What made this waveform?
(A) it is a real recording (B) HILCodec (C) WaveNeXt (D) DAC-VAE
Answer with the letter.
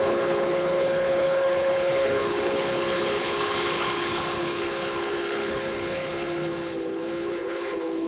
B